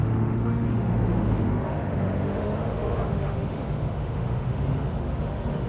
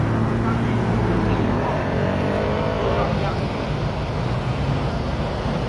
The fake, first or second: first